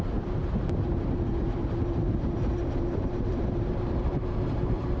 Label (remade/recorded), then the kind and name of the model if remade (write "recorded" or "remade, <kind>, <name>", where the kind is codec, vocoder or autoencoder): remade, vocoder, BigVGAN v2